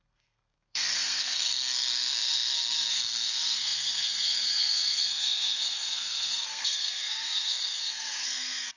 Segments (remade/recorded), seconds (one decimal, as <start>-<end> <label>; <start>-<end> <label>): 0.0-8.8 remade